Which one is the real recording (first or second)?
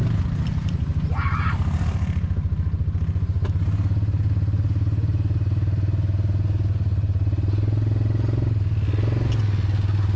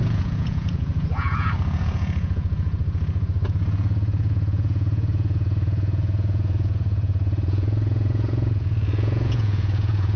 first